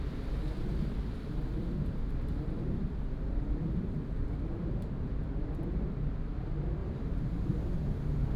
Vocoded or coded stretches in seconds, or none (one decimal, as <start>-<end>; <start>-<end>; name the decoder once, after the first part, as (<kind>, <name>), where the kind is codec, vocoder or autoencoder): 6.8-8.0 (vocoder, BigVGAN v2)